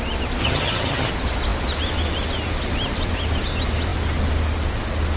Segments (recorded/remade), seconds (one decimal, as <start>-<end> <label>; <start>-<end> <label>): 0.0-0.4 recorded; 0.4-1.1 remade; 1.1-5.2 recorded